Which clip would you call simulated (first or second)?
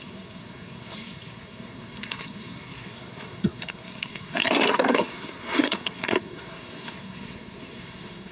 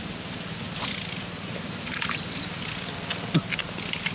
first